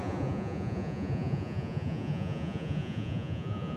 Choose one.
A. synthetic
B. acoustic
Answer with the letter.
A